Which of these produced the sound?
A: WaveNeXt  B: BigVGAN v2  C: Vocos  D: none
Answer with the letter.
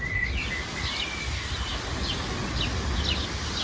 D